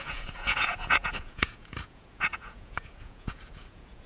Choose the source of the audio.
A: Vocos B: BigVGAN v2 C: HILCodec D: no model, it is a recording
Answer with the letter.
A